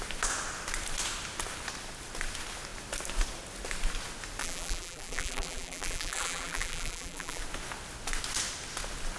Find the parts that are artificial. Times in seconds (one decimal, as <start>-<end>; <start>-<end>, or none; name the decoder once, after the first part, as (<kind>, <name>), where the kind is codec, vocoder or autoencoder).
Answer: 4.4-7.4 (vocoder, BigVGAN v2)